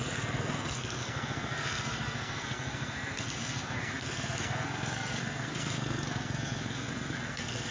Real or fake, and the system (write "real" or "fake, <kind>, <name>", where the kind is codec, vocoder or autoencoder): fake, codec, SNAC